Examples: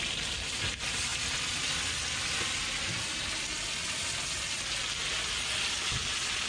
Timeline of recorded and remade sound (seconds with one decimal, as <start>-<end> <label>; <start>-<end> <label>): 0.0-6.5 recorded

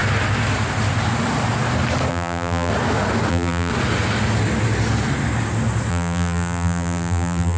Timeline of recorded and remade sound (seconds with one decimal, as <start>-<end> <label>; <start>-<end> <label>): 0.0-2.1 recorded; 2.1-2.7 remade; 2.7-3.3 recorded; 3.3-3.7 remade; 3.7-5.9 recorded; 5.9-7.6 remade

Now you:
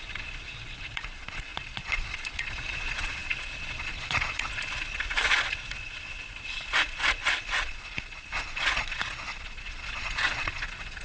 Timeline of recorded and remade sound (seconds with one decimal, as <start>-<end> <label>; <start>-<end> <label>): 0.0-11.0 remade

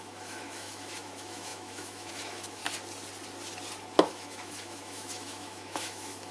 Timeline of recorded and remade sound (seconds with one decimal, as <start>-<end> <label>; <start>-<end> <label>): 0.0-2.6 remade; 2.6-4.1 recorded; 4.1-6.3 remade

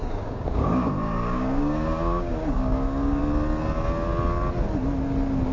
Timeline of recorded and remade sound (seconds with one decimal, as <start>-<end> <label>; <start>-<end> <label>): 0.0-3.2 remade; 3.2-5.5 recorded